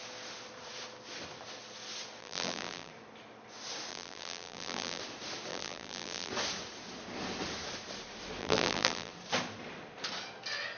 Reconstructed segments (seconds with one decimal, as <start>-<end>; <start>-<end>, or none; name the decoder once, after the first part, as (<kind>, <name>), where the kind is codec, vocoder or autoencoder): 2.2-2.9 (vocoder, BigVGAN v2); 3.9-5.0; 5.5-6.3; 8.4-9.1

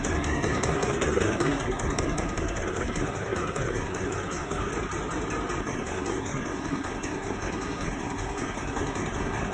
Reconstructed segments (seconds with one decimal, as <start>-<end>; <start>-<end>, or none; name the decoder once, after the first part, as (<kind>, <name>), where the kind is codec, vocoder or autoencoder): 0.0-4.7 (codec, SNAC); 5.6-9.5

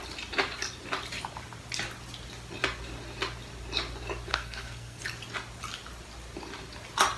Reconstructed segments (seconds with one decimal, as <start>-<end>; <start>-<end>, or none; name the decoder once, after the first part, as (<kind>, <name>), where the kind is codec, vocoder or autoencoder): 4.3-5.0 (codec, SNAC)